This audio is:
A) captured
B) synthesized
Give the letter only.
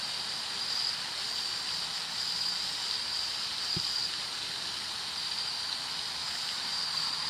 A